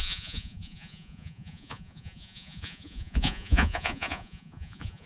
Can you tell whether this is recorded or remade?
remade